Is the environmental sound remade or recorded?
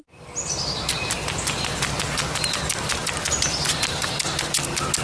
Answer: recorded